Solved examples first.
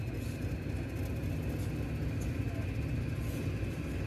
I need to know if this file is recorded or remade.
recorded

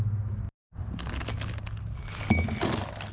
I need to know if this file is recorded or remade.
recorded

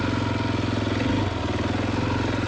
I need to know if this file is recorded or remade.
recorded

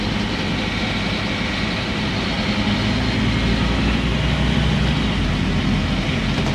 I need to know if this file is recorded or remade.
recorded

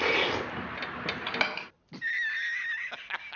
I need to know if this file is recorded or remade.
recorded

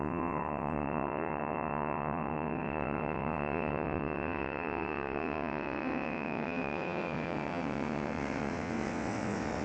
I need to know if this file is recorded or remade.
remade